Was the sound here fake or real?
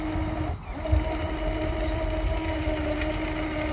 real